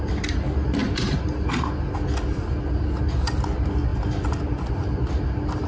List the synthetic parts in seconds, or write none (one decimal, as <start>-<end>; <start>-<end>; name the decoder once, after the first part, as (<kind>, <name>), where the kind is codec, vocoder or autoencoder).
0.8-1.5 (vocoder, BigVGAN v2)